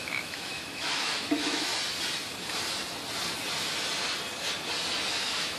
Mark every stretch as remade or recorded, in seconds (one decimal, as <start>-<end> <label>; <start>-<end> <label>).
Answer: 0.0-1.7 remade; 1.7-5.1 recorded; 5.1-5.6 remade